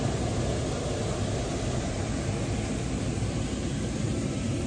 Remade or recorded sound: recorded